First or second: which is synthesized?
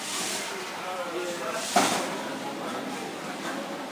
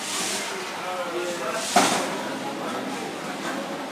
first